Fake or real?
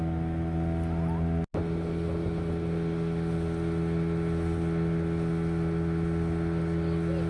real